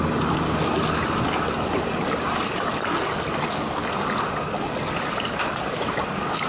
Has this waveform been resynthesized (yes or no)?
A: no